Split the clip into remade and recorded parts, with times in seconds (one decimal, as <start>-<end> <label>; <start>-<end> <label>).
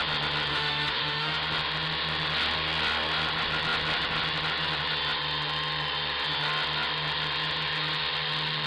0.0-0.5 recorded; 0.5-1.4 remade; 1.4-8.7 recorded